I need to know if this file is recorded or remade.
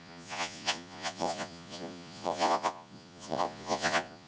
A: remade